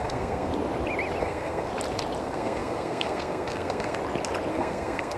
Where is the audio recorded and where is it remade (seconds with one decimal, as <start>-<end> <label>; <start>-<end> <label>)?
0.0-0.5 remade; 0.5-1.2 recorded; 1.2-1.7 remade; 1.7-2.2 recorded; 2.2-4.0 remade; 4.0-4.5 recorded; 4.5-5.2 remade